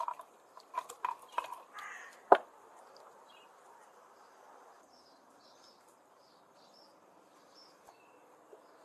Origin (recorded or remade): recorded